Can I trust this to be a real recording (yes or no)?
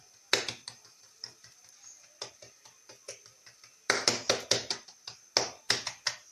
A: yes